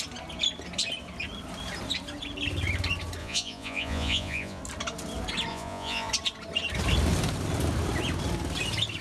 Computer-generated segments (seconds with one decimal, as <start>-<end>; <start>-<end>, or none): 3.2-4.6; 5.5-6.1